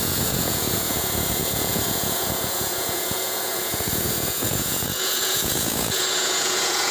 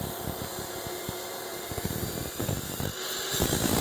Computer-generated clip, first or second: first